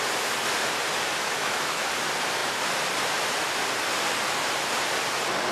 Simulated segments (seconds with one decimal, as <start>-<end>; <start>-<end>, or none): 1.2-1.9